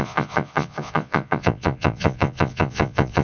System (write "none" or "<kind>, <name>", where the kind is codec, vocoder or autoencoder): vocoder, Vocos